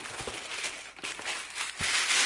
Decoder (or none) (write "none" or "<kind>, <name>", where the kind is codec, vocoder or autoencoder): none